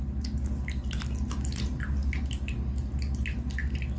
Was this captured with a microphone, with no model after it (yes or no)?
yes